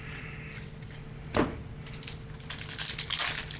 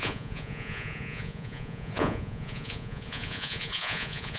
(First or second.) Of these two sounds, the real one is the first